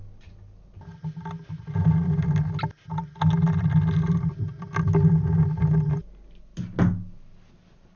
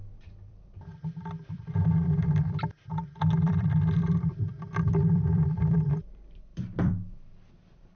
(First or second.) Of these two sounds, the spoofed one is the second